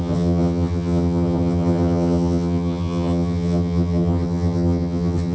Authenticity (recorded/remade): remade